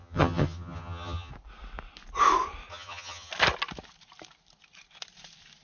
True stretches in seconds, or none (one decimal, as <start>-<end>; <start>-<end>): 1.3-2.7; 3.3-5.6